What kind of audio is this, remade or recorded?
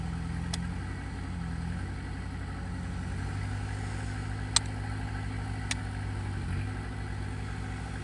recorded